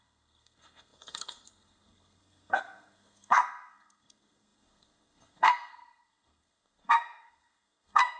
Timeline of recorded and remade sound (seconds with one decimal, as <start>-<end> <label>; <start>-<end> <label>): 0.0-8.2 remade